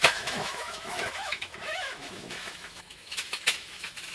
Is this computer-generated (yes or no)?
yes